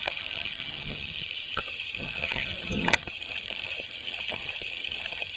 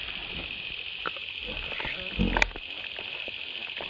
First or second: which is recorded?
second